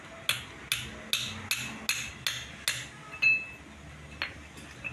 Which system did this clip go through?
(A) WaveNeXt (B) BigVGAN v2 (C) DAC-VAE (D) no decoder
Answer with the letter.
D